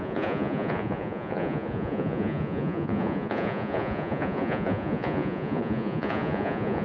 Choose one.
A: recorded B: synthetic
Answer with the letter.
B